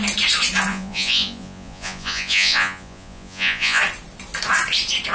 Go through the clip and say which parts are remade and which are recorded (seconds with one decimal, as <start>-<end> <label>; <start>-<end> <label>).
0.0-0.7 recorded; 0.7-3.8 remade; 3.8-5.1 recorded